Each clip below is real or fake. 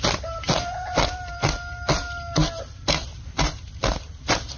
real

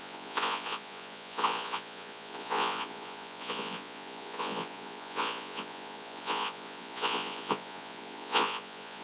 fake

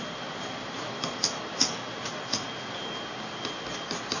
real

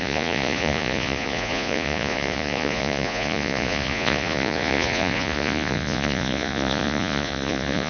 fake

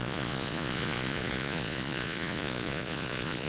fake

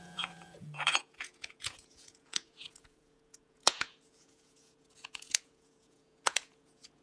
fake